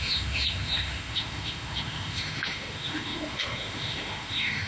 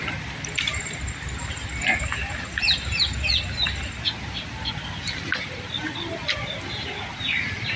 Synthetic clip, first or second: first